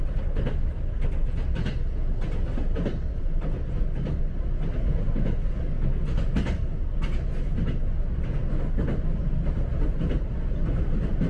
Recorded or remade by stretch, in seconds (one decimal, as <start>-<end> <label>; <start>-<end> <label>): 0.0-11.3 recorded